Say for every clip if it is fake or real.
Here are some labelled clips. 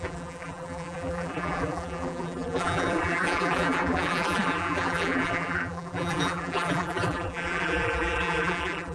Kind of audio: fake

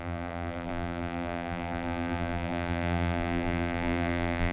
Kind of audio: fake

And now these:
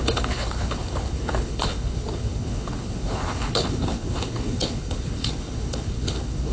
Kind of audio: fake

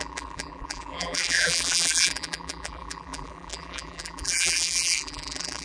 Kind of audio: fake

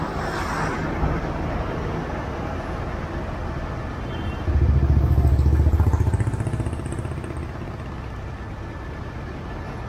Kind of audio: real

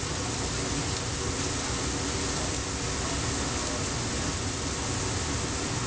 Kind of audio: real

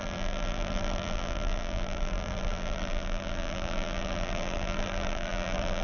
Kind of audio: fake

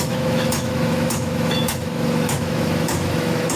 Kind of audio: fake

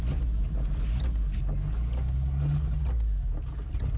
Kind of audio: real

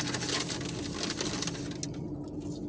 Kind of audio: real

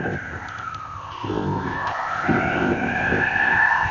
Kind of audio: fake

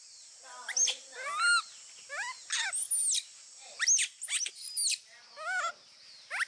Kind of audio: real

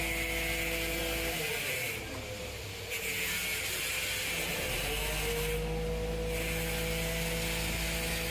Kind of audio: real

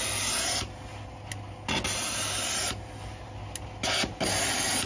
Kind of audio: real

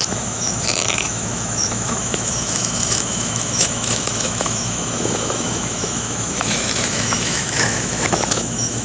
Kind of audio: fake